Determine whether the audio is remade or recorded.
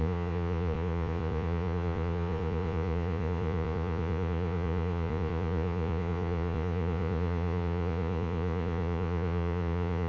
remade